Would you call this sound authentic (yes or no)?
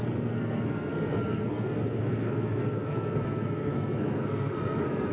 no